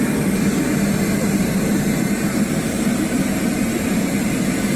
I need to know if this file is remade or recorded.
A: remade